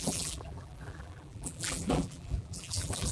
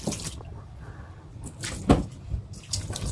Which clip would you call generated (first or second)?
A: first